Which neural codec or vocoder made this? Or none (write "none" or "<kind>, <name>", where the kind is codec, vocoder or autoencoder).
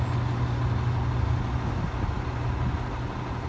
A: none